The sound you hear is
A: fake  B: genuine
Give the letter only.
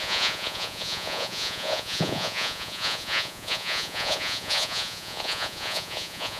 A